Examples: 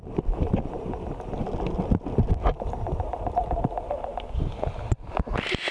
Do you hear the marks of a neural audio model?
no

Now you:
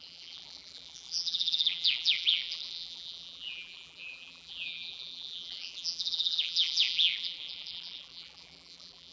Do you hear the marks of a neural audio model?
yes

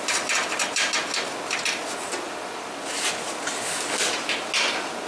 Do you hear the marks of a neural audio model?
no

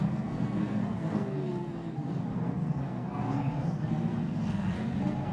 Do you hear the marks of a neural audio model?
yes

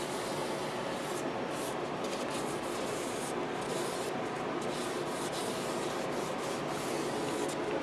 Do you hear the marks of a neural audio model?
no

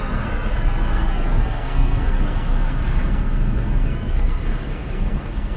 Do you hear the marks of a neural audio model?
yes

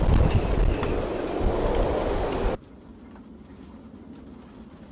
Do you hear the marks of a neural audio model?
no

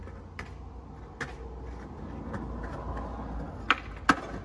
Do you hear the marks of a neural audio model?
no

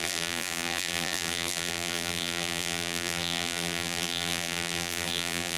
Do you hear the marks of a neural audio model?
yes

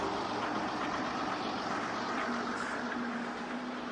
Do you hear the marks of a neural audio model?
no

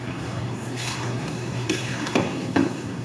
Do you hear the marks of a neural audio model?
yes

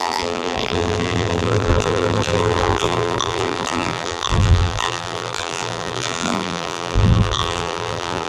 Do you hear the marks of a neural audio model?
yes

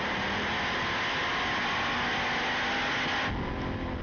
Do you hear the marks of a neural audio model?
no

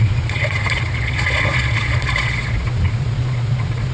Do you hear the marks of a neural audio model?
yes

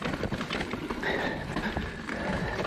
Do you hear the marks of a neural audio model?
no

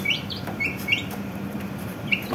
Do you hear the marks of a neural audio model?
yes